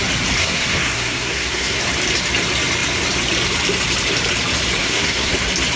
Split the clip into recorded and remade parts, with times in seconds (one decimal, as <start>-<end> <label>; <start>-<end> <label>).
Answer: 0.0-0.4 recorded; 0.4-1.8 remade; 1.8-4.8 recorded; 4.8-5.3 remade; 5.3-5.8 recorded